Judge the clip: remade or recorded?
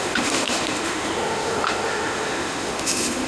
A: remade